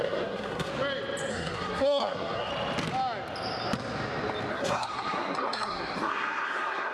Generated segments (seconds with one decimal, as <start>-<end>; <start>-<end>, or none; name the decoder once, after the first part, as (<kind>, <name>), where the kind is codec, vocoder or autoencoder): 0.0-0.7 (codec, SNAC); 1.3-2.5; 4.5-6.9